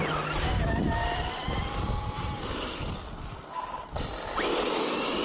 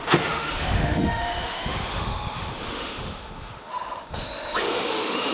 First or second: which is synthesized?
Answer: second